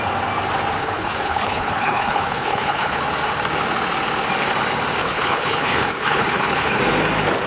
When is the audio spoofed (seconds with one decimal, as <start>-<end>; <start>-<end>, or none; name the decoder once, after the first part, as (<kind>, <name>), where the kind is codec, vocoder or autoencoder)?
0.8-3.0 (codec, HILCodec); 5.0-6.8